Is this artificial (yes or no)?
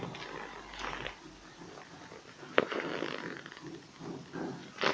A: no